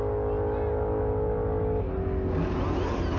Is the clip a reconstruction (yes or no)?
no